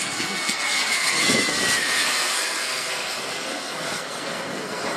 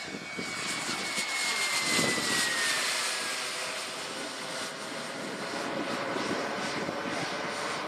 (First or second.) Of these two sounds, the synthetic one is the first